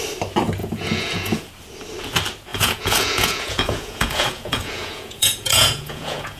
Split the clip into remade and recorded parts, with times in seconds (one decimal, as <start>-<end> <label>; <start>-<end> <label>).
0.0-0.6 recorded; 0.6-1.5 remade; 1.5-2.5 recorded; 2.5-6.4 remade